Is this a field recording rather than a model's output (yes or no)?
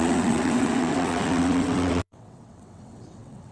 no